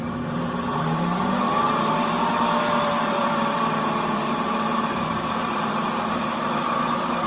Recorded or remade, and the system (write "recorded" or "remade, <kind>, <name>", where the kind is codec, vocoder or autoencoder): remade, vocoder, BigVGAN v2